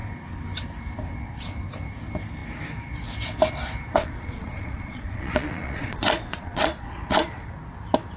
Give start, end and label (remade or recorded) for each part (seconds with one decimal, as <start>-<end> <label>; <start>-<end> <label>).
0.0-3.9 recorded; 3.9-7.5 remade; 7.5-8.2 recorded